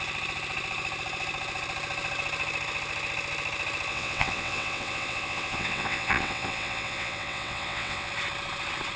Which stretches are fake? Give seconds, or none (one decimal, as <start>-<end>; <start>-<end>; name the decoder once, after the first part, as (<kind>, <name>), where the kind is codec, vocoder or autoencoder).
3.9-8.1 (vocoder, WaveNeXt)